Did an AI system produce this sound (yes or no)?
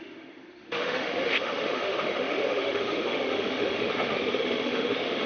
yes